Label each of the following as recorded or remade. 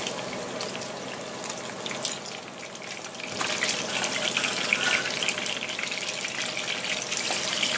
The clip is recorded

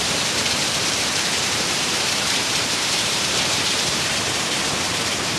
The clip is remade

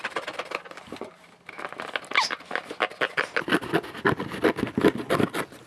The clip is recorded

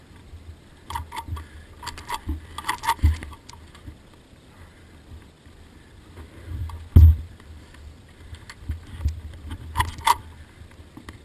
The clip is recorded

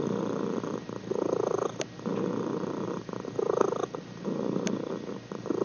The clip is recorded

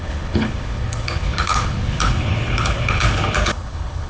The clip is remade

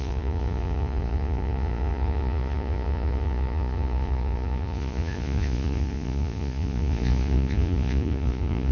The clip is remade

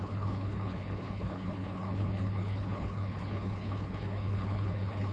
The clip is remade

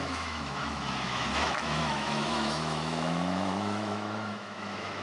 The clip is remade